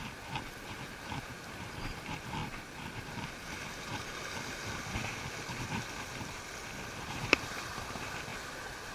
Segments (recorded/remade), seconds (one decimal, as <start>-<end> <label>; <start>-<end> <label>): 0.0-8.9 recorded